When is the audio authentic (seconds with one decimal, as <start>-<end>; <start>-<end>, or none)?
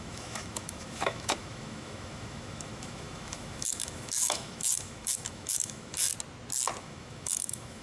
6.1-6.8